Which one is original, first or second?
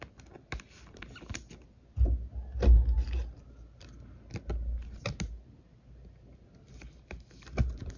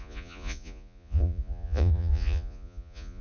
first